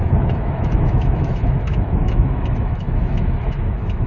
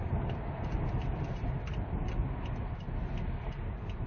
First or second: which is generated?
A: first